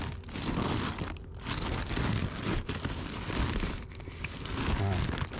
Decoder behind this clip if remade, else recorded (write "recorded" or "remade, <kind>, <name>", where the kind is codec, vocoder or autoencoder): recorded